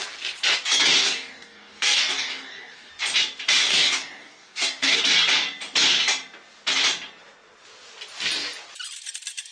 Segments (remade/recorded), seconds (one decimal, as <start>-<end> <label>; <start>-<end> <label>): 0.0-1.0 recorded; 1.0-2.9 remade; 2.9-3.6 recorded; 3.6-5.0 remade; 5.0-9.5 recorded